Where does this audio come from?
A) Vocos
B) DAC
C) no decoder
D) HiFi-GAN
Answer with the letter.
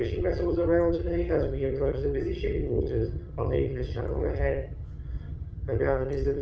D